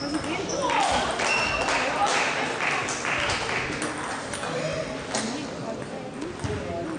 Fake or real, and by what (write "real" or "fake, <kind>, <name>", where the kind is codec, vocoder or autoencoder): real